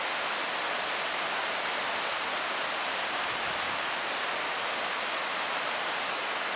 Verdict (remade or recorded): recorded